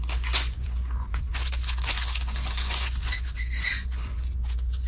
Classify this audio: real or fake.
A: fake